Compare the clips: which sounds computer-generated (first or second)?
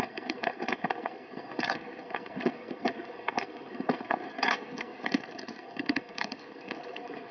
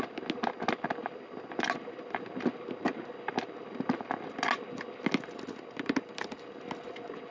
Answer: first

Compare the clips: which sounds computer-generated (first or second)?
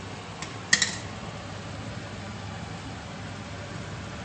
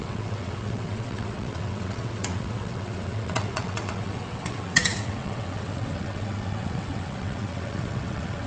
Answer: second